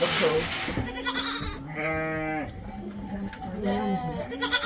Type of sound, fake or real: real